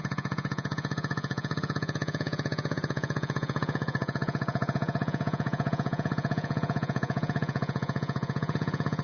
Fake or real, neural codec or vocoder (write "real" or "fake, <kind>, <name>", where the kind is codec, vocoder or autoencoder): fake, vocoder, Vocos